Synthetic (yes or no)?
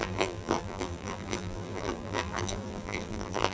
yes